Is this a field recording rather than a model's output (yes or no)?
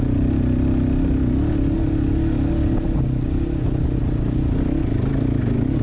yes